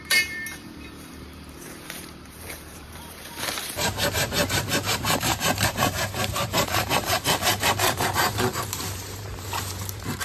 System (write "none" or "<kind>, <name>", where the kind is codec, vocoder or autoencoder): vocoder, BigVGAN v2